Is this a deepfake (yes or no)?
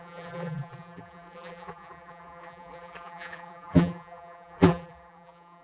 yes